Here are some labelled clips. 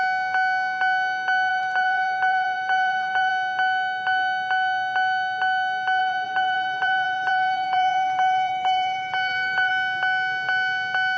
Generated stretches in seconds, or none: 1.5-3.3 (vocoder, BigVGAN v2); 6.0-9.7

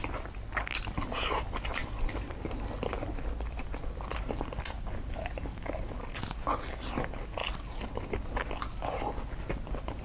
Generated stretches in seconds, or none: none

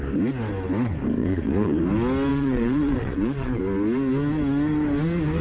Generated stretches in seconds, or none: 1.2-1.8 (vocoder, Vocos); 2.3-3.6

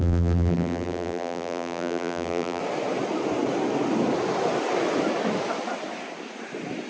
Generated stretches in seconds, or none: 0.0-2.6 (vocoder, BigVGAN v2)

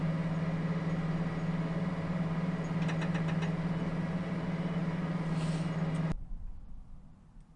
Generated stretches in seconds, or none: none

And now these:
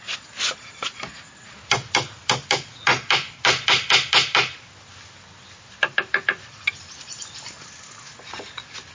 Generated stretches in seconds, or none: none